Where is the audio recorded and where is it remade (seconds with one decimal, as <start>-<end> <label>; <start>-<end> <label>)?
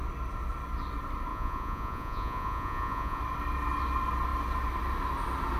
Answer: 0.0-1.3 recorded; 1.3-3.2 remade; 3.2-5.6 recorded